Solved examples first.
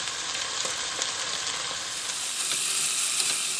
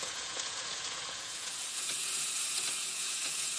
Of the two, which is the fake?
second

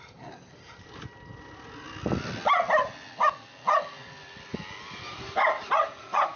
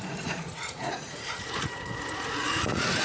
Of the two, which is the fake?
second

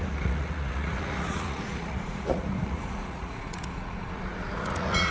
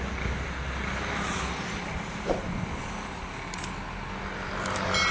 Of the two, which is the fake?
first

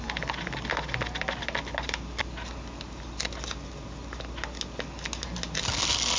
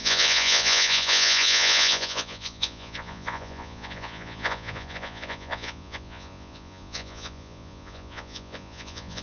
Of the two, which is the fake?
second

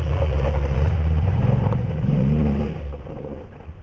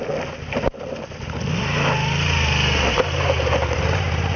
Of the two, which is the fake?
first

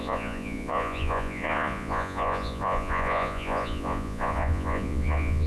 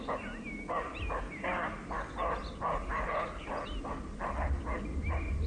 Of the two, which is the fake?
first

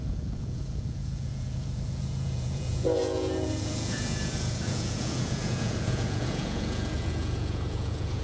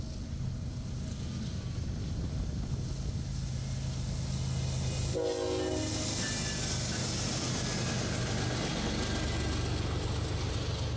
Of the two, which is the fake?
first